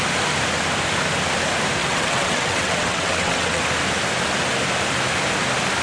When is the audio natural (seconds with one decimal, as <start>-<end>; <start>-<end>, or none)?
0.0-1.8; 3.6-5.8